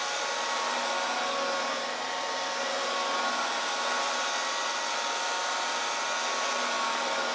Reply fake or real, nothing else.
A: real